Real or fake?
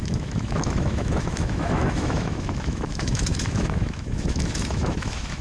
fake